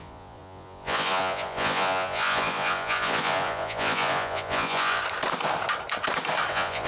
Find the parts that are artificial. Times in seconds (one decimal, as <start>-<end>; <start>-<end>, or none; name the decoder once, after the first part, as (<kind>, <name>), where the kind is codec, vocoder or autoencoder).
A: 0.0-5.0 (vocoder, Vocos); 6.5-6.9